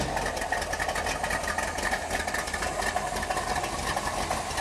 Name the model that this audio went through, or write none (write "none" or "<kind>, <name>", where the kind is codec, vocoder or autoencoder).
none